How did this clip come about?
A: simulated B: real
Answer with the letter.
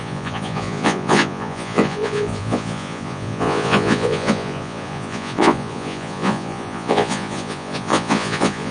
A